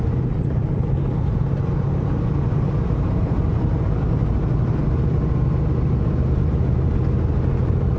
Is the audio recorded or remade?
recorded